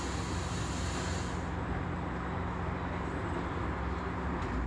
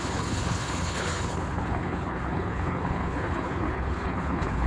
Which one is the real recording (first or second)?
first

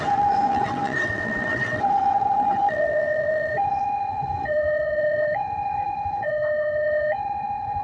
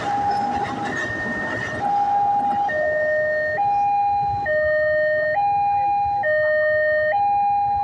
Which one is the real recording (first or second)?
second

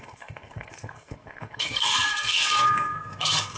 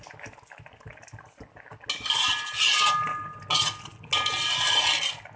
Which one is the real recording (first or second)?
second